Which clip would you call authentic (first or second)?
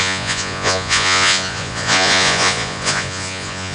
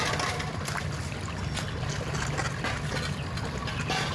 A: second